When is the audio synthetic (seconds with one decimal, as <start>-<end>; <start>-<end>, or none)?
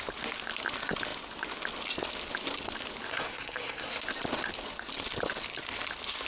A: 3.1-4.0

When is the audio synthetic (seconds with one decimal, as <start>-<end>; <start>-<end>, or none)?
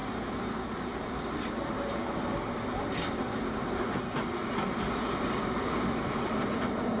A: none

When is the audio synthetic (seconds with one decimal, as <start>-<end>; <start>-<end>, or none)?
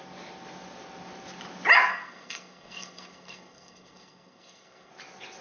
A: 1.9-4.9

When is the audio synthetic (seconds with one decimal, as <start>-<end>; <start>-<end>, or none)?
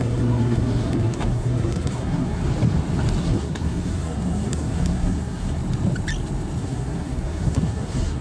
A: 0.0-2.4; 3.2-5.6; 6.6-8.2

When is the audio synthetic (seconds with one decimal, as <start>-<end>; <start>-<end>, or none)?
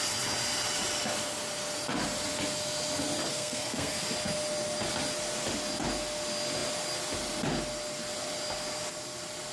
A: 3.3-4.0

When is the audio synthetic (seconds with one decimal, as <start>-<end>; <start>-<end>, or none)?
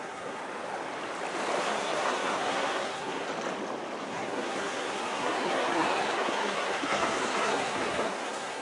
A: 0.0-0.4; 1.6-3.3; 4.0-8.6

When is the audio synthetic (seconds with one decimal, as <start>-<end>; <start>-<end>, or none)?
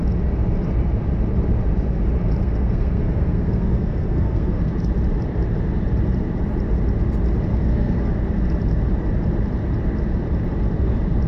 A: 2.4-4.7; 7.5-8.1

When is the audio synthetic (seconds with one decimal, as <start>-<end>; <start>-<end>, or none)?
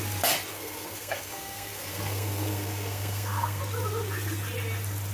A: 0.5-3.6